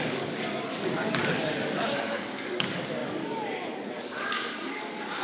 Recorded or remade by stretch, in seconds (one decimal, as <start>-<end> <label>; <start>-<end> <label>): 0.0-5.2 remade